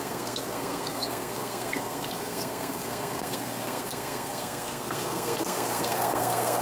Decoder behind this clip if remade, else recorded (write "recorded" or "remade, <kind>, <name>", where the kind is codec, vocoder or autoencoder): remade, codec, SNAC